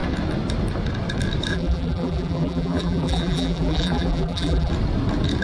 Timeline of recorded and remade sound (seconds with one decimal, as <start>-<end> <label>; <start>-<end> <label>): 0.0-1.5 recorded; 1.5-4.7 remade; 4.7-5.4 recorded